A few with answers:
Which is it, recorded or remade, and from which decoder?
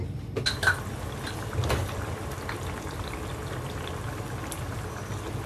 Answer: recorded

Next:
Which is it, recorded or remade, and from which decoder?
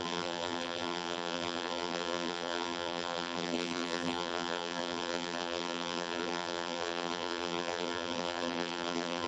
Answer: remade, vocoder, BigVGAN v2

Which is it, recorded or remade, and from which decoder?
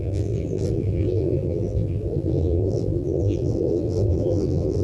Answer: remade, vocoder, BigVGAN v2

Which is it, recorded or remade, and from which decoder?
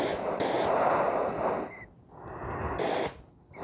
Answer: recorded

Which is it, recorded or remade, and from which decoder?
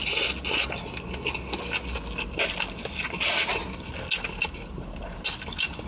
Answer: recorded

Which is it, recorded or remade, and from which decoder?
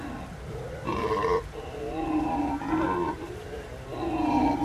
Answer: remade, vocoder, BigVGAN v2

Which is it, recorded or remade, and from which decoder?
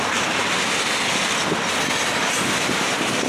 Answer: recorded